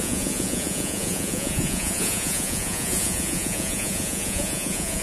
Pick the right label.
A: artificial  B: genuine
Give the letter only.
A